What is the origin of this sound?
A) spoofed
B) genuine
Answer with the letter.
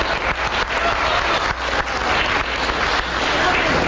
B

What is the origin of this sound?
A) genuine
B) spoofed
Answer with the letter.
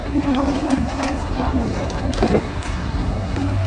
B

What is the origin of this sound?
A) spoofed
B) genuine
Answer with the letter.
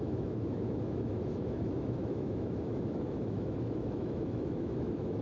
A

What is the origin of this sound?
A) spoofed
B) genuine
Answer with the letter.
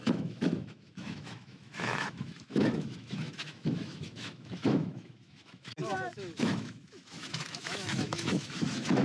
A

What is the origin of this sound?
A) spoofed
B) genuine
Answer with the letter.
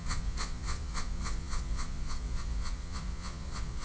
A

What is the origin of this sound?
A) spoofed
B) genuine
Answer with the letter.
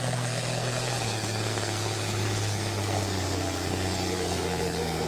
A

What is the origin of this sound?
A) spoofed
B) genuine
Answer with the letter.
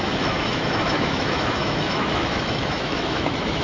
A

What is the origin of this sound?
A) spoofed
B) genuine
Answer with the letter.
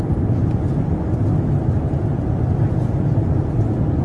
B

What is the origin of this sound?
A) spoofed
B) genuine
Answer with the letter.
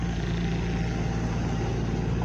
B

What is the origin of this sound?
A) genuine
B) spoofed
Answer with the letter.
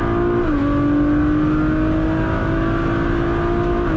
A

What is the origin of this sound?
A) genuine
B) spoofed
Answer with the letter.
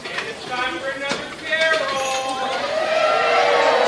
B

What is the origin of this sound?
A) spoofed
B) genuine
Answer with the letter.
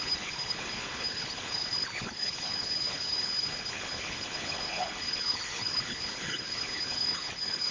A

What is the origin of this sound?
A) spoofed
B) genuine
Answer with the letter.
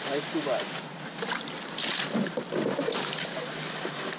B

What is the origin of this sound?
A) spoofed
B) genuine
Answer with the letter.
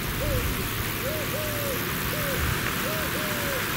B